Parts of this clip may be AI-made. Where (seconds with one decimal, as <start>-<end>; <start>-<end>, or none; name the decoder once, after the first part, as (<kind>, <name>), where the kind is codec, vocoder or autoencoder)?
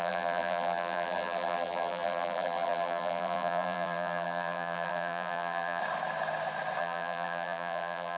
0.0-5.8 (vocoder, BigVGAN v2); 6.8-8.2